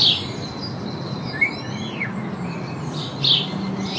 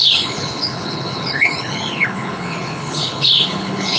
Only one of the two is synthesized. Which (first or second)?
second